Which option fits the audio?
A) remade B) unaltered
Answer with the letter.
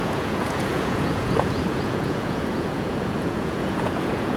A